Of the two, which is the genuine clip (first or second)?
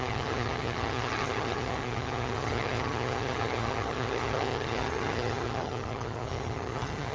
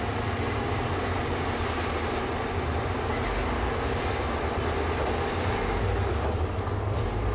second